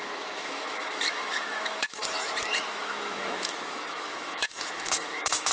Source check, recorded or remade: remade